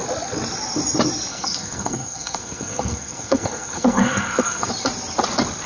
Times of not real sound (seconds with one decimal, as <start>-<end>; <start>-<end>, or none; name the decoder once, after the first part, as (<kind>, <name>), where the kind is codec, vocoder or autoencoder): 1.3-4.7 (codec, SNAC)

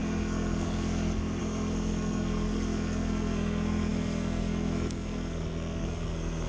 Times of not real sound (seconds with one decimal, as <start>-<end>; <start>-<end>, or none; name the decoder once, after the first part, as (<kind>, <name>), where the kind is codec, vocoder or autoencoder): 0.0-6.5 (codec, SNAC)